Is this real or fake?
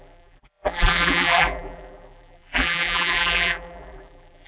fake